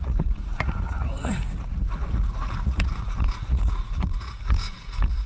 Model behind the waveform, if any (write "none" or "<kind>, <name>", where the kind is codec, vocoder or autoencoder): vocoder, Vocos